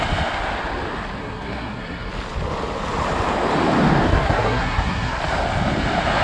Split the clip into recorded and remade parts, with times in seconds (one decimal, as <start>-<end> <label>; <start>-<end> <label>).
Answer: 0.0-1.2 recorded; 1.2-2.1 remade; 2.1-4.1 recorded; 4.1-5.2 remade; 5.2-6.2 recorded